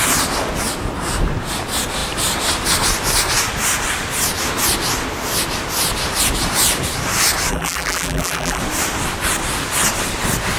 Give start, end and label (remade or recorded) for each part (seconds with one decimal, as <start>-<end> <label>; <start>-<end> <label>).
0.0-7.5 recorded; 7.5-8.6 remade; 8.6-10.6 recorded